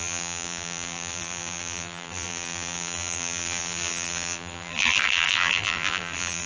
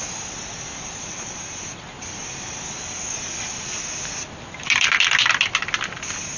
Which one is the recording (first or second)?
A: second